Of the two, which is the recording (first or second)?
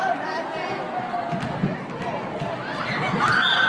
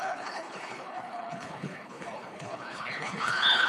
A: first